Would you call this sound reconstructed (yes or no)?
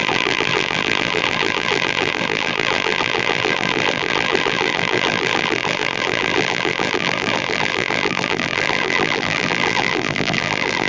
yes